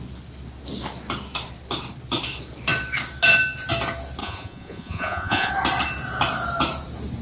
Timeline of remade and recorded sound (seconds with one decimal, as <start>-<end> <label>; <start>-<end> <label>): 0.0-4.2 recorded; 4.2-5.5 remade; 5.5-7.2 recorded